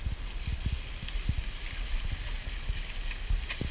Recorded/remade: recorded